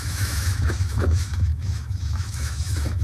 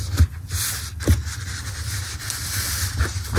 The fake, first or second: first